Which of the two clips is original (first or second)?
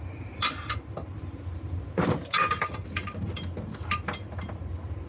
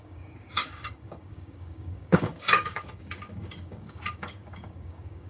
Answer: first